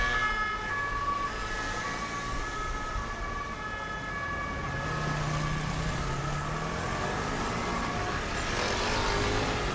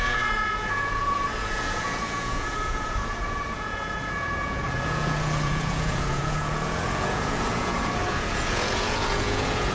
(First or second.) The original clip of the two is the first